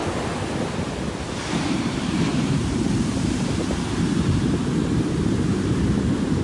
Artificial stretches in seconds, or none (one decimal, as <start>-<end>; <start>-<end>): 1.5-6.4